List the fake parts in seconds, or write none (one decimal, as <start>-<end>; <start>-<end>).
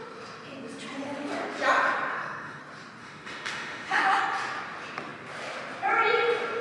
2.1-2.6; 3.0-4.2